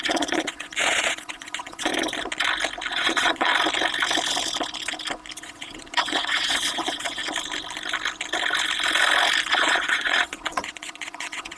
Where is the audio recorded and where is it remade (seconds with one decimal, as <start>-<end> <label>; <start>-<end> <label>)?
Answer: 0.0-1.9 remade; 1.9-2.9 recorded; 2.9-3.5 remade; 3.5-5.4 recorded; 5.4-7.2 remade; 7.2-9.5 recorded; 9.5-11.6 remade